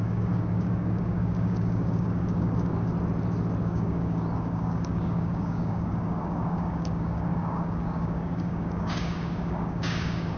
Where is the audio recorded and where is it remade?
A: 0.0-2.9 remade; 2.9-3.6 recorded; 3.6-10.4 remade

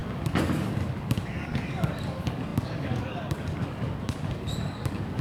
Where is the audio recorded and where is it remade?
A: 0.0-5.2 remade

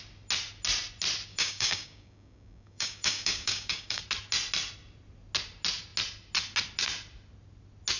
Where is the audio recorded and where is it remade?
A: 0.0-1.3 recorded; 1.3-4.0 remade; 4.0-8.0 recorded

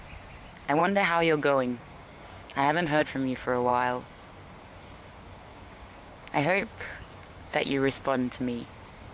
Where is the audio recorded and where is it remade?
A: 0.0-0.8 recorded; 0.8-3.0 remade; 3.0-5.5 recorded; 5.5-8.3 remade; 8.3-9.1 recorded

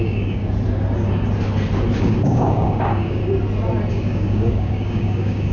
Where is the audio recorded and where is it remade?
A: 0.0-0.4 remade; 0.4-2.0 recorded; 2.0-3.2 remade; 3.2-3.9 recorded; 3.9-5.5 remade